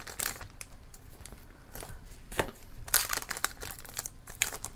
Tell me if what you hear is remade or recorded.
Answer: remade